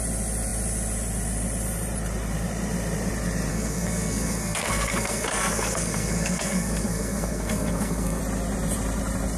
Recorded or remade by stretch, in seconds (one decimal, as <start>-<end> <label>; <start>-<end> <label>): 0.0-3.5 recorded; 3.5-8.2 remade; 8.2-9.4 recorded